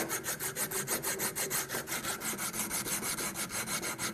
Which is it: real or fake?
real